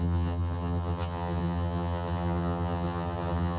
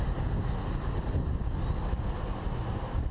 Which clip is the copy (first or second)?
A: first